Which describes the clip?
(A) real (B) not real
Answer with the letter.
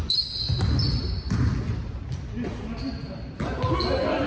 A